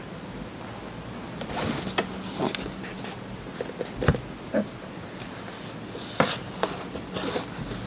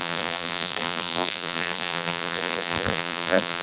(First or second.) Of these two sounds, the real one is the first